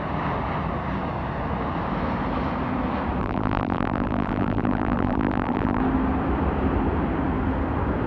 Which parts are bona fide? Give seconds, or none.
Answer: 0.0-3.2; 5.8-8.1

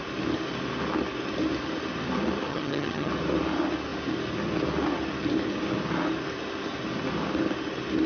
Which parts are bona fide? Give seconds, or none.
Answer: 0.0-2.5; 3.1-8.1

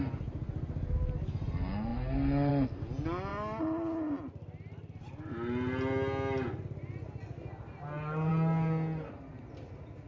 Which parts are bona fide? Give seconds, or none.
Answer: 0.0-10.1

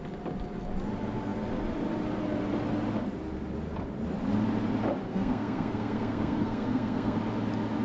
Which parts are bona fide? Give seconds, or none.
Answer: 0.0-5.1; 7.2-7.8

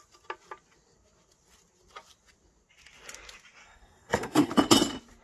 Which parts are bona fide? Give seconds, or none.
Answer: 0.0-3.6; 4.5-5.2

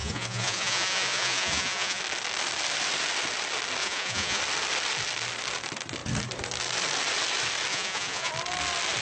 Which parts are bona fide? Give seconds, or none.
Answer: 2.0-3.8; 4.4-7.7; 8.3-9.0